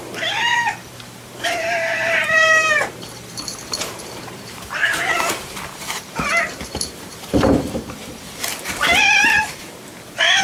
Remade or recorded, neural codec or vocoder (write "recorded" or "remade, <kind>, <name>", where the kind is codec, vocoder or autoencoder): remade, vocoder, BigVGAN v2